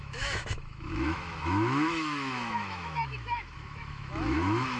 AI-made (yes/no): yes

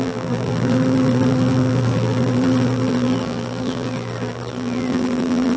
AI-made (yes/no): yes